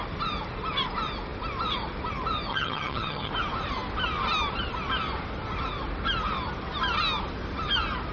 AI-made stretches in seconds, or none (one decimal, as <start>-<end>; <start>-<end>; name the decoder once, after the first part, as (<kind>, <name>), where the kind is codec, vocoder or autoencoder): 2.5-3.3 (vocoder, HiFi-GAN)